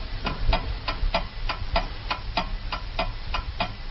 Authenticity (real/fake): real